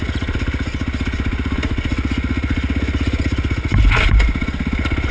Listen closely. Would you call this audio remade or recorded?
recorded